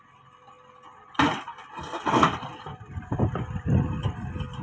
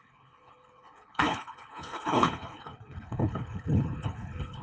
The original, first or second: first